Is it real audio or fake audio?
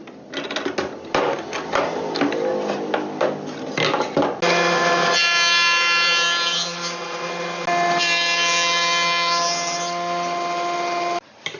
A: real